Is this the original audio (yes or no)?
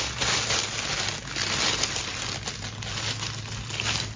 yes